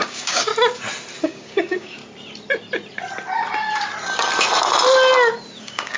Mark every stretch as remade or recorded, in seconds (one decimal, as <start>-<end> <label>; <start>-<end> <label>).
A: 0.0-0.5 remade; 0.5-1.2 recorded; 1.2-2.0 remade; 2.0-5.6 recorded; 5.6-6.0 remade